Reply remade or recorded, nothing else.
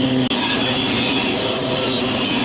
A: recorded